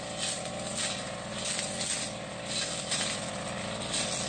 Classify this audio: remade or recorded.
recorded